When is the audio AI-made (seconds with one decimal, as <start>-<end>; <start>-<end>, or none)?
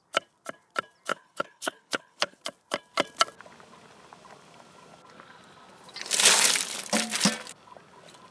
1.1-2.4